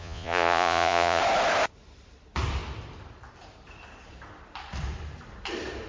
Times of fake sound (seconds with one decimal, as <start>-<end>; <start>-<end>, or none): 0.0-1.2